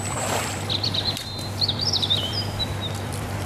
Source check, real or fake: fake